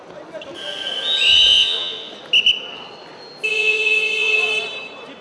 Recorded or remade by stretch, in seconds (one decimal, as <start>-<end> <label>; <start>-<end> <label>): 0.0-1.5 recorded; 1.5-2.1 remade; 2.1-3.5 recorded; 3.5-4.5 remade; 4.5-5.2 recorded